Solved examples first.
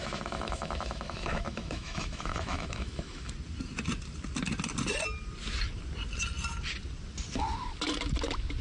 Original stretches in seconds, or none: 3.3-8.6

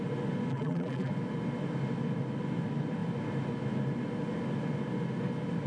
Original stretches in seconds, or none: 0.0-0.5; 1.1-5.7

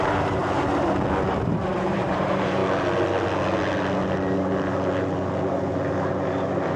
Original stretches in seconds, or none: 0.4-1.3; 2.6-6.8

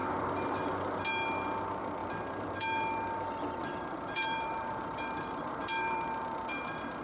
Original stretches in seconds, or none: 1.0-2.0; 6.2-7.0

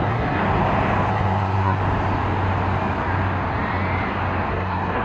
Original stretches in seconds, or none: 0.4-1.1; 1.8-4.5